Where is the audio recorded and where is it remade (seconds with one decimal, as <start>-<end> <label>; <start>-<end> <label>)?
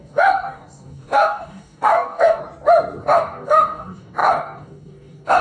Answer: 0.0-2.4 remade; 2.4-3.0 recorded; 3.0-5.4 remade